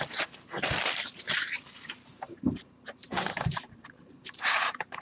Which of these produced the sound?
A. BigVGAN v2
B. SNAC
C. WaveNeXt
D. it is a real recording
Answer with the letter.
A